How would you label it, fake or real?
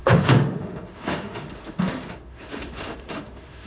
fake